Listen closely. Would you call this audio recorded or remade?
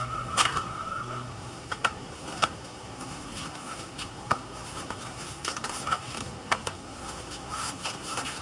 remade